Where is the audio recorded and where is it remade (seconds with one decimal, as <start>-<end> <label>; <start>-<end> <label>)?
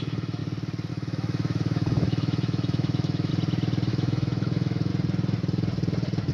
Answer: 0.0-0.4 remade; 0.4-0.9 recorded; 0.9-3.3 remade; 3.3-3.9 recorded; 3.9-4.9 remade; 4.9-6.3 recorded